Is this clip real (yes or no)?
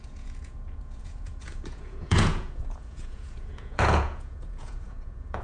no